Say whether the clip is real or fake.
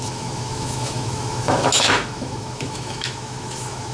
fake